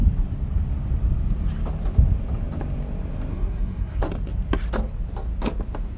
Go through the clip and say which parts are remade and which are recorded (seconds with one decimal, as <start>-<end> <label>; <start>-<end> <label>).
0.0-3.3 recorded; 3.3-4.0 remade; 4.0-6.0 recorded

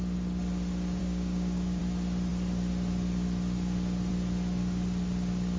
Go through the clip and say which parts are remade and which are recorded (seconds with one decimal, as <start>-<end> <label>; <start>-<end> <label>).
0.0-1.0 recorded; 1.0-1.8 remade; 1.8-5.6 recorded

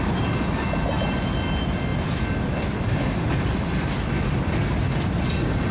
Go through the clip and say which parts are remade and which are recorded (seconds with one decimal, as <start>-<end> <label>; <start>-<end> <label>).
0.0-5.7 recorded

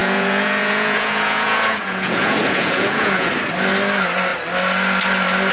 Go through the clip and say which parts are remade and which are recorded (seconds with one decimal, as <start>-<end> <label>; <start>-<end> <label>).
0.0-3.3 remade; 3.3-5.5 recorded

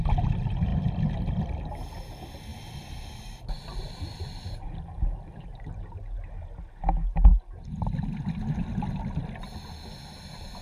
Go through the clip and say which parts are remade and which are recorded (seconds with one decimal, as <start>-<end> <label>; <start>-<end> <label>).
0.0-10.6 recorded

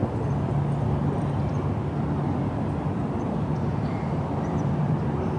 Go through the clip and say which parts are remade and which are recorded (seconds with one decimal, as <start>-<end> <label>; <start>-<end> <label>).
0.0-3.2 recorded; 3.2-5.4 remade

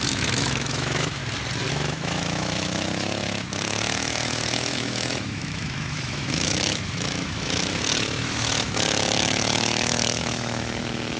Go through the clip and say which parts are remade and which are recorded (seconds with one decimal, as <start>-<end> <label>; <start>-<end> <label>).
0.0-1.2 remade; 1.2-1.7 recorded; 1.7-11.2 remade

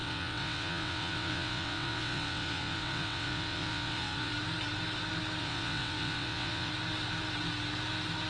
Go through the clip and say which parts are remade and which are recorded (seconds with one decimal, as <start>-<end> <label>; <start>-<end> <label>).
0.0-4.3 remade; 4.3-5.4 recorded; 5.4-6.7 remade; 6.7-8.3 recorded